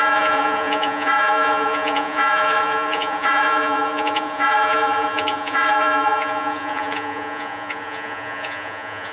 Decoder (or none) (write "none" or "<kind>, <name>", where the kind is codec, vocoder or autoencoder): vocoder, Vocos